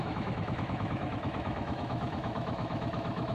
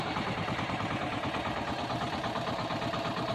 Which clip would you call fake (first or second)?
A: first